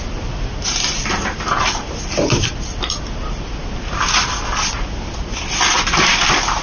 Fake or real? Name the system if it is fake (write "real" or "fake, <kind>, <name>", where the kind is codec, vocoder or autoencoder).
real